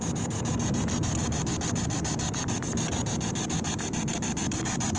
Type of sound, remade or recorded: recorded